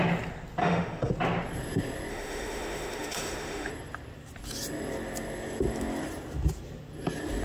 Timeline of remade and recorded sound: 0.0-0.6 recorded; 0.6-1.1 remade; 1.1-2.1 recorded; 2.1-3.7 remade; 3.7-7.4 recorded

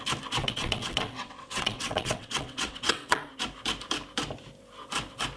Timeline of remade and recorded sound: 0.0-0.4 recorded; 0.4-3.3 remade; 3.3-5.4 recorded

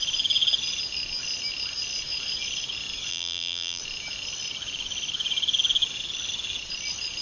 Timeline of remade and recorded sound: 0.0-3.1 recorded; 3.1-3.8 remade; 3.8-7.2 recorded